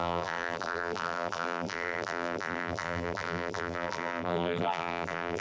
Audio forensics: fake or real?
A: fake